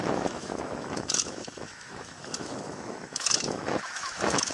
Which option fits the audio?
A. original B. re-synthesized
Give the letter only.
B